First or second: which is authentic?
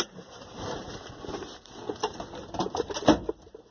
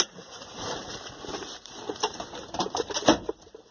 first